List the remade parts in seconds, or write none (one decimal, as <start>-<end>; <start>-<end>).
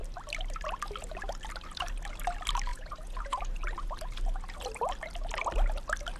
2.7-3.4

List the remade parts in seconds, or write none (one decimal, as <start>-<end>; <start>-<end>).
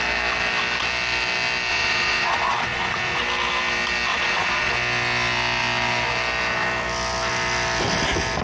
1.7-3.2; 4.1-4.7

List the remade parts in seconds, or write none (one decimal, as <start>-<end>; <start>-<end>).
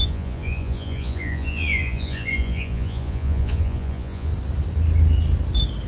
0.0-4.3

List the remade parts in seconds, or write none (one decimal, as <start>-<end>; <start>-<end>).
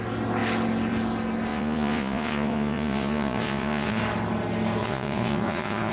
1.5-4.0; 4.8-5.9